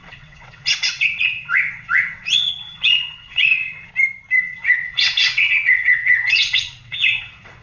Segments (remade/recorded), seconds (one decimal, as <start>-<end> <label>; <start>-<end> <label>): 0.0-3.9 remade; 3.9-4.4 recorded; 4.4-7.6 remade